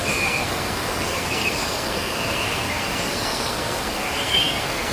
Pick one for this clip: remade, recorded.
remade